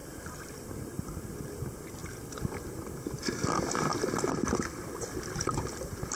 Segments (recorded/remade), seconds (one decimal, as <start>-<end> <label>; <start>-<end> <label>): 0.0-1.0 remade; 1.0-2.0 recorded; 2.0-2.8 remade; 2.8-3.9 recorded; 3.9-6.2 remade